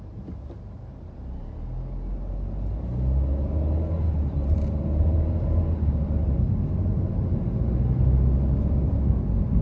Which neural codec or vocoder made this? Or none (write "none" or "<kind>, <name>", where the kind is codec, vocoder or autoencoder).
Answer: none